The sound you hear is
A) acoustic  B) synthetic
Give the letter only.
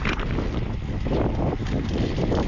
A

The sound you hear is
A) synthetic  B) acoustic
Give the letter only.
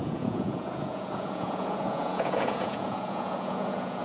A